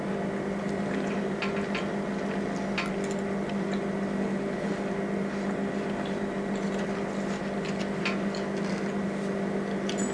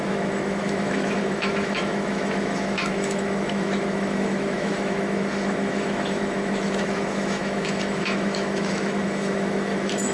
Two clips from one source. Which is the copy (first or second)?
second